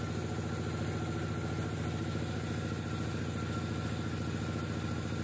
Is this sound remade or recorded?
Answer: recorded